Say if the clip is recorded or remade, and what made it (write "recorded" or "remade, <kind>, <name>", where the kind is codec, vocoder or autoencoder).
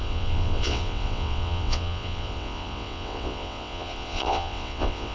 remade, vocoder, WaveNeXt